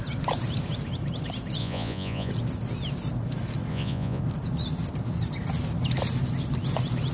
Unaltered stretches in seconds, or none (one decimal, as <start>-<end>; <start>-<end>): 0.0-1.6; 2.3-3.7; 4.2-7.1